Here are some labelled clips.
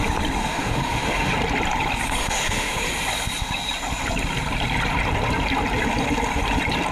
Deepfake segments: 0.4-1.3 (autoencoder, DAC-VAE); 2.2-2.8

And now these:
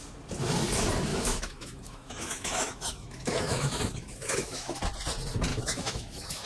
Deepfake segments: 1.1-4.8 (autoencoder, DAC-VAE); 5.5-6.5

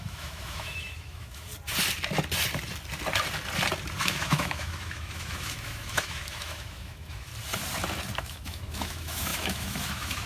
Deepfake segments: 0.0-1.5 (autoencoder, DAC-VAE); 4.0-7.3; 8.2-10.3

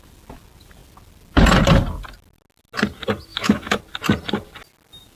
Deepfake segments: 3.3-3.8 (autoencoder, DAC-VAE)

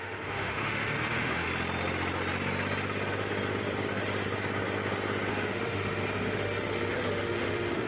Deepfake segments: 0.0-1.5 (autoencoder, DAC-VAE); 5.3-7.9